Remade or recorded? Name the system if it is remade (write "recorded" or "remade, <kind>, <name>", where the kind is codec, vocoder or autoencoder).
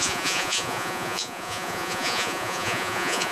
remade, vocoder, Vocos